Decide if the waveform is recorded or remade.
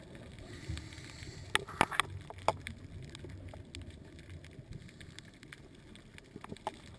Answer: recorded